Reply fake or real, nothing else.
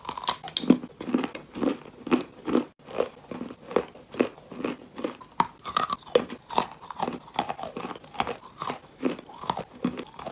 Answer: real